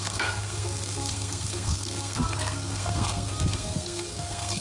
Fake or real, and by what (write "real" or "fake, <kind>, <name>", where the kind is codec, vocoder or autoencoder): fake, codec, SNAC